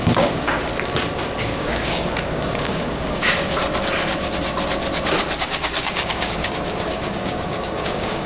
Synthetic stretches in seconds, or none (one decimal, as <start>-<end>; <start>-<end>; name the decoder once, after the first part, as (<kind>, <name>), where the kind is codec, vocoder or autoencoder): 0.0-0.7 (codec, DAC); 1.4-3.6; 5.4-8.3